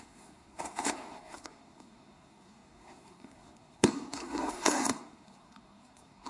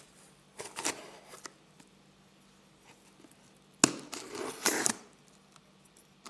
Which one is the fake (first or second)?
first